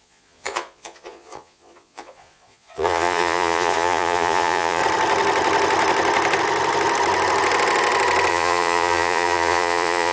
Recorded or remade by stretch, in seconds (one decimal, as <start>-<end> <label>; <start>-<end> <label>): 0.0-4.8 remade; 4.8-8.3 recorded; 8.3-10.1 remade